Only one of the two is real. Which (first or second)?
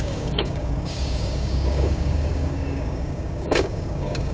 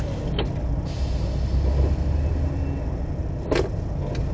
second